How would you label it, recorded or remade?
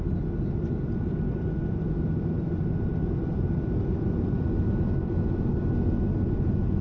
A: recorded